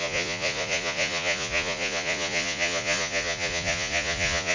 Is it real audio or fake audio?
fake